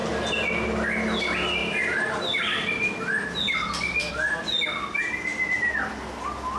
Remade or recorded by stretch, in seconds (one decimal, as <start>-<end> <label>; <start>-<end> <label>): 0.0-1.6 recorded; 1.6-4.1 remade; 4.1-6.6 recorded